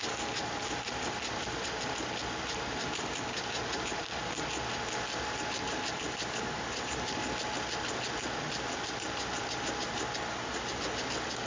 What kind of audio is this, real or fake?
real